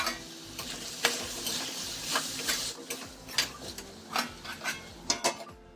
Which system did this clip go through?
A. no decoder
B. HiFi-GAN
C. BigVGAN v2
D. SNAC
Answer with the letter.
A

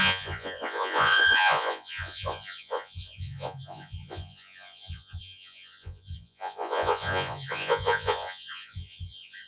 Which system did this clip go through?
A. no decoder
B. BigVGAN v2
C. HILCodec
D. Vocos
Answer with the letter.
D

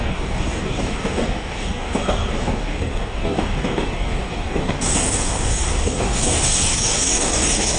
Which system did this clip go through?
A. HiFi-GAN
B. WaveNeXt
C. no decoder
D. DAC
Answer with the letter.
D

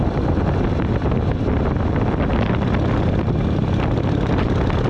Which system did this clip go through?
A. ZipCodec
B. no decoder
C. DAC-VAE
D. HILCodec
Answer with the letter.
B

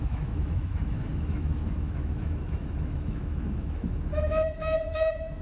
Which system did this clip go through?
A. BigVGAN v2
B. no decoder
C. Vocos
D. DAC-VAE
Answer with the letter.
D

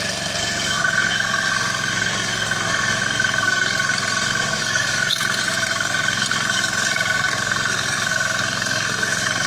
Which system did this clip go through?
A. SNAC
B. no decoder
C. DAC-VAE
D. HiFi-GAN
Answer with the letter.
A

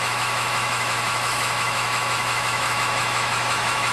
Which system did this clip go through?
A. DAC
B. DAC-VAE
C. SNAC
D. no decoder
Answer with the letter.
B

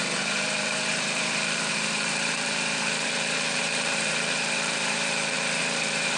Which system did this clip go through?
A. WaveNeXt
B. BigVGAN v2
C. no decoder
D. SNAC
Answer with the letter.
B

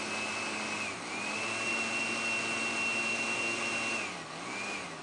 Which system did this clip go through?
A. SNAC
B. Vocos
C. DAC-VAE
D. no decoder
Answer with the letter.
D